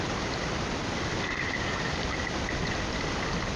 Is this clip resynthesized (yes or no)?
no